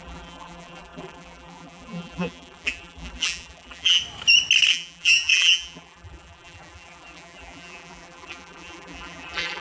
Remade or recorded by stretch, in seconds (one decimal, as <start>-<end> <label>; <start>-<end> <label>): 0.0-4.0 remade; 4.0-4.7 recorded; 4.7-9.6 remade